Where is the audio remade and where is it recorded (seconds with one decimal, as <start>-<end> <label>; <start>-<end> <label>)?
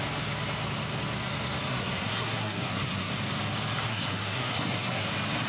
0.0-1.7 recorded; 1.7-3.1 remade; 3.1-3.9 recorded; 3.9-5.1 remade; 5.1-5.5 recorded